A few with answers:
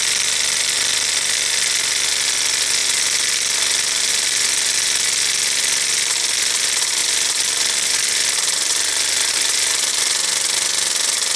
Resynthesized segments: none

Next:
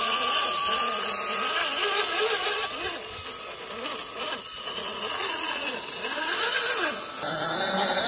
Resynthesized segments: 0.0-0.6 (vocoder, Vocos); 4.5-5.9

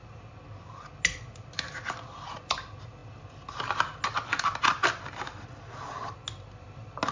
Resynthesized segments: none

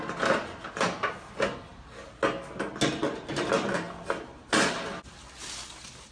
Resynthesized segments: none